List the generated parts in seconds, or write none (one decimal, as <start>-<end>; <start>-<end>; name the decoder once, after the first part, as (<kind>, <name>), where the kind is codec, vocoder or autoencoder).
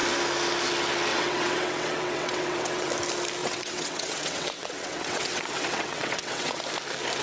1.1-2.9 (vocoder, WaveNeXt); 3.4-6.6